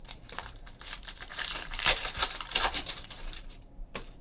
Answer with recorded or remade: remade